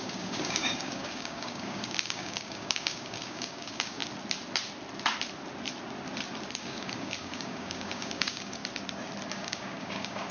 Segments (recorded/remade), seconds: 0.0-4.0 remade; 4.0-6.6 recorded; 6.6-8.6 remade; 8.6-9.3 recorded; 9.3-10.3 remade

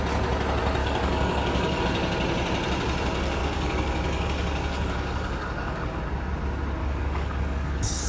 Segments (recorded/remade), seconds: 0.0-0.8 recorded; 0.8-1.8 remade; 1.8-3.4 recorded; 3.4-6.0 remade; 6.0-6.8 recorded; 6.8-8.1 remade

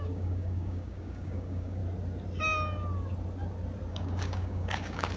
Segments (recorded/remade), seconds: 0.0-1.8 remade; 1.8-3.9 recorded; 3.9-5.2 remade